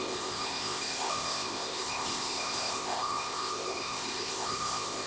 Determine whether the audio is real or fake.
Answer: fake